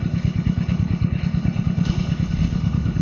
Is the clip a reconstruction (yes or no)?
yes